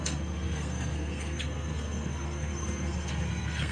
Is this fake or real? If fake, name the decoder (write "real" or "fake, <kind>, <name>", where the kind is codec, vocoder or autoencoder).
fake, codec, SNAC